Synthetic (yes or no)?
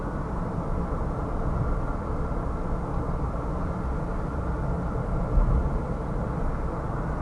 no